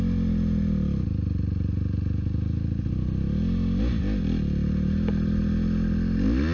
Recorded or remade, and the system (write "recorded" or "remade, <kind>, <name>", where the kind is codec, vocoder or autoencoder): recorded